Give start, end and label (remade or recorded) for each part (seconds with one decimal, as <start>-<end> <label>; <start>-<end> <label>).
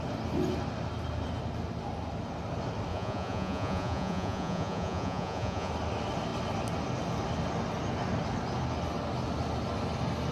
0.0-2.9 recorded; 2.9-5.7 remade; 5.7-10.3 recorded